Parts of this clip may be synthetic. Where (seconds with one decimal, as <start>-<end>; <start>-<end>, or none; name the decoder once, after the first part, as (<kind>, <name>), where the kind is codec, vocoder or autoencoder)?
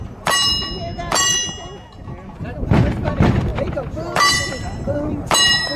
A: 0.0-1.4 (vocoder, BigVGAN v2); 2.4-5.8